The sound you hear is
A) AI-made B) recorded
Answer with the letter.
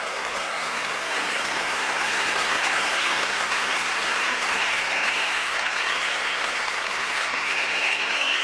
A